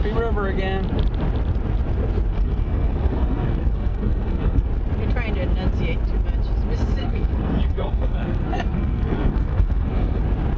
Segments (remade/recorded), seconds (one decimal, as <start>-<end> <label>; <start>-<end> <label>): 0.0-2.3 recorded; 2.3-4.7 remade; 4.7-7.0 recorded; 7.0-10.2 remade; 10.2-10.6 recorded